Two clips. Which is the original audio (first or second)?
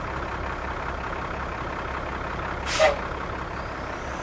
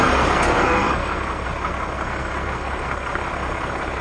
first